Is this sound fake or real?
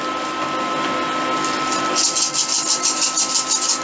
real